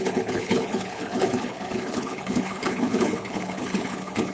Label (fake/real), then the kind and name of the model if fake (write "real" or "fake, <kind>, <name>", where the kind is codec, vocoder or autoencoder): fake, codec, HILCodec